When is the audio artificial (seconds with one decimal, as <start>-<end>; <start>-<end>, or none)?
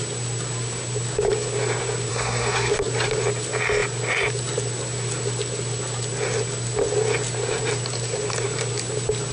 2.1-2.7